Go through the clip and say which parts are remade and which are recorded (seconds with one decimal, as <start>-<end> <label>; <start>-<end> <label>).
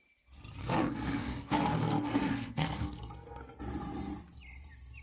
0.0-0.6 recorded; 0.6-3.6 remade; 3.6-5.0 recorded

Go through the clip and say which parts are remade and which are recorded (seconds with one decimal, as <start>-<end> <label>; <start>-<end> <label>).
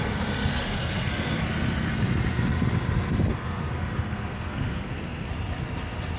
0.0-0.5 recorded; 0.5-1.4 remade; 1.4-3.3 recorded; 3.3-5.3 remade; 5.3-6.2 recorded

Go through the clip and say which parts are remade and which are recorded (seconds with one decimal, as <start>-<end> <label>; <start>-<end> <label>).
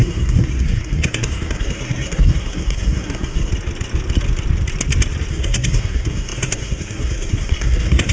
0.0-3.5 remade; 3.5-5.3 recorded; 5.3-8.1 remade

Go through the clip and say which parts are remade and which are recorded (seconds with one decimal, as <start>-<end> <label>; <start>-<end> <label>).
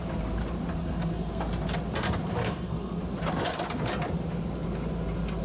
0.0-0.8 recorded; 0.8-1.4 remade; 1.4-2.4 recorded; 2.4-3.0 remade; 3.0-5.4 recorded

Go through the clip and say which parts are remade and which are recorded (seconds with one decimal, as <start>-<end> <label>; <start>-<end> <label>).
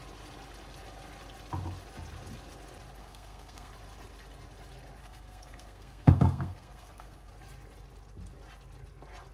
0.0-3.0 recorded; 3.0-3.7 remade; 3.7-5.0 recorded; 5.0-7.3 remade; 7.3-9.3 recorded